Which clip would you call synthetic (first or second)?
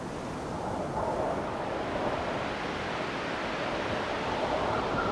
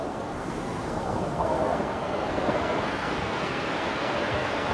second